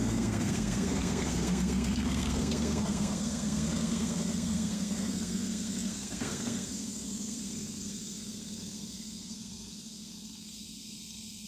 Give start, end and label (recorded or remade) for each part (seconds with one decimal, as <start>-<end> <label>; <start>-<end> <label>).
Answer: 0.0-11.5 remade